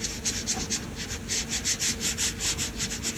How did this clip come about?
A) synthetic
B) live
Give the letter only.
B